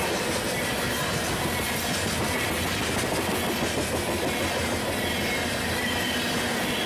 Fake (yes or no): no